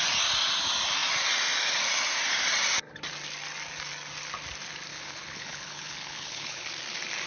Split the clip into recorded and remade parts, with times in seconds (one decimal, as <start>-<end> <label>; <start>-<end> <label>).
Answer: 0.0-4.9 recorded; 4.9-6.7 remade; 6.7-7.3 recorded